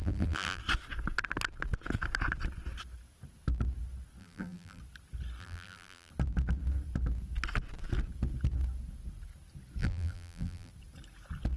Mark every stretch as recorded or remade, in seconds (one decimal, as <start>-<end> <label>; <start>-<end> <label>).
0.0-0.6 remade; 0.6-4.2 recorded; 4.2-4.8 remade; 4.8-5.4 recorded; 5.4-6.1 remade; 6.1-9.8 recorded; 9.8-10.7 remade; 10.7-11.6 recorded